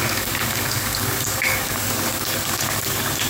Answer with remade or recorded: remade